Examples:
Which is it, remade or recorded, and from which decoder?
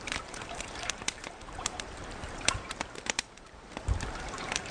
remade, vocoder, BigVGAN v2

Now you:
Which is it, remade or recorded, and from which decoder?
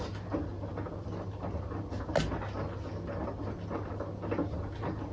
recorded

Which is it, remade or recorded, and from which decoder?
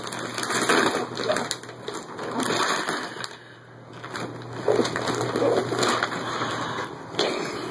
recorded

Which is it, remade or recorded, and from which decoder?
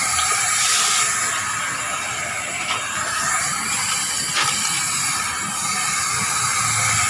recorded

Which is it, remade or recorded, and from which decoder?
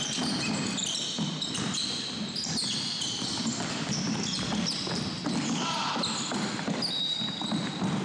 remade, vocoder, BigVGAN v2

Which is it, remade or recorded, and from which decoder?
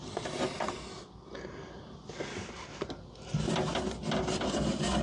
recorded